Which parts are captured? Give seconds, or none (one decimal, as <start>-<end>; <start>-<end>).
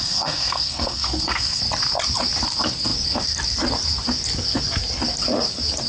1.6-5.9